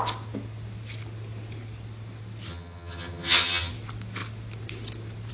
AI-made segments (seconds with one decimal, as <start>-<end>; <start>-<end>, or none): 2.5-3.7